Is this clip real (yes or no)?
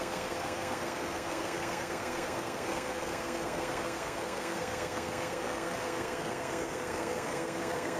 no